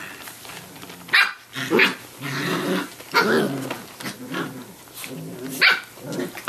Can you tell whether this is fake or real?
real